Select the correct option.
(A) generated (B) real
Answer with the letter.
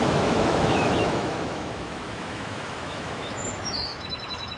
A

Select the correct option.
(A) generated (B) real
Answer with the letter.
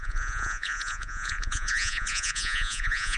A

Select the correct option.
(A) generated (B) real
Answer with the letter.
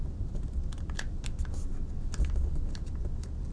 B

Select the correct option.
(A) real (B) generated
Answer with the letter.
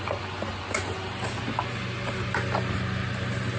A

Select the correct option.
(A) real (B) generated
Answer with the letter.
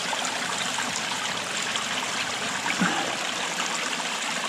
A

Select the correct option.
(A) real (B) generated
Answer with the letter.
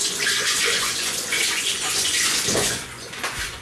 B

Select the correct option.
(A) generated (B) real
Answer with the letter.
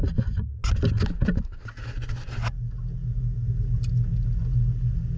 B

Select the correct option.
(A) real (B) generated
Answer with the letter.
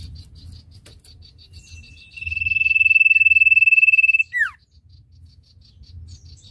A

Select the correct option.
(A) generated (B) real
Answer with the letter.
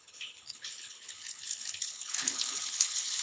A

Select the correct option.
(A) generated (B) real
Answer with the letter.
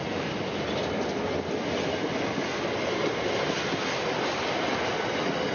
B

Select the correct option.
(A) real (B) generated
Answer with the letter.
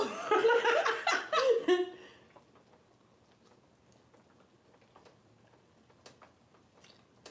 A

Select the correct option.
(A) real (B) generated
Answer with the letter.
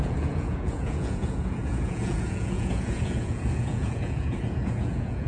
B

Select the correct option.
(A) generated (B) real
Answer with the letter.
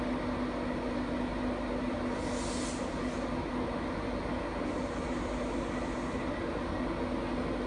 B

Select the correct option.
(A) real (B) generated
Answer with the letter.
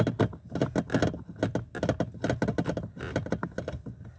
A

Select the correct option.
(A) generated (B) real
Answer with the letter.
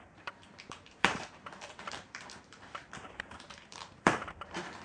A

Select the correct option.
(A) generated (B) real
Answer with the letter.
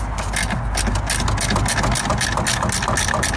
B